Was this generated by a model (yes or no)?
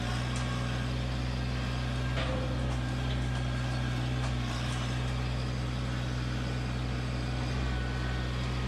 no